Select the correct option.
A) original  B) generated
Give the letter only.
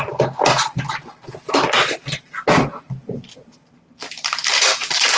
A